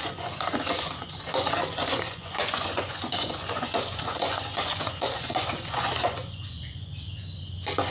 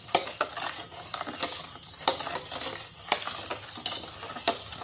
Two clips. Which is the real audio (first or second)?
second